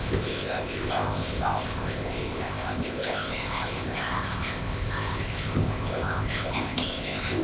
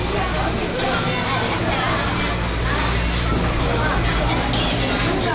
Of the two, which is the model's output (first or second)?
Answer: first